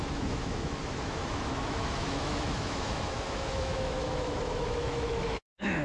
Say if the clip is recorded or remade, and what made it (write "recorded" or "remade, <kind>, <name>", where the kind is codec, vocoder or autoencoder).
remade, autoencoder, DAC-VAE